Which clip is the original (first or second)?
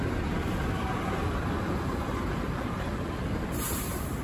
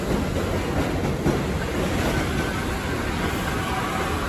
second